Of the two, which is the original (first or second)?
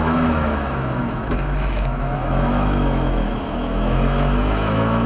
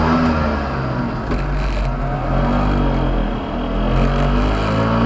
second